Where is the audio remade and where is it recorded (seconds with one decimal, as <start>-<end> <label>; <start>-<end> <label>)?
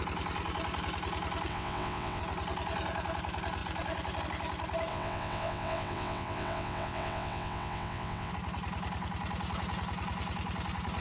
0.0-1.5 recorded; 1.5-2.2 remade; 2.2-4.9 recorded; 4.9-8.3 remade; 8.3-11.0 recorded